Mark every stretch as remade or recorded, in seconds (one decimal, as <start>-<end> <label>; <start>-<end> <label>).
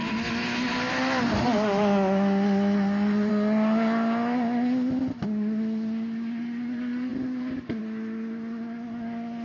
0.0-7.1 recorded; 7.1-7.8 remade; 7.8-9.4 recorded